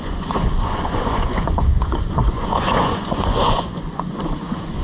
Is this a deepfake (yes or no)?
yes